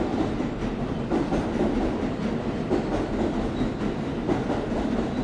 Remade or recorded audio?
recorded